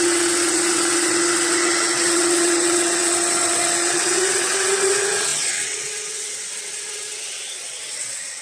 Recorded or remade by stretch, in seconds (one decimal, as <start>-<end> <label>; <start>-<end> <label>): 0.0-8.4 remade